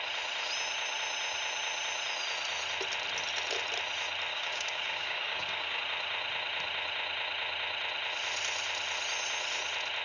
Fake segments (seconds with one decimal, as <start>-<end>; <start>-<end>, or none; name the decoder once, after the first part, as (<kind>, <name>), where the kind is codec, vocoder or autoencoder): 4.3-5.8 (codec, DAC)